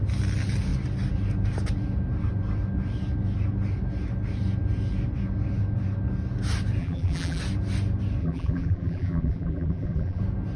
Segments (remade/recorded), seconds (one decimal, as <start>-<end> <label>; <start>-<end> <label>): 0.0-6.8 recorded; 6.8-7.4 remade; 7.4-8.2 recorded; 8.2-10.2 remade; 10.2-10.6 recorded